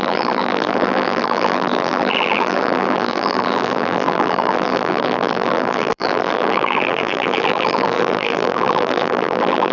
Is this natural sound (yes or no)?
no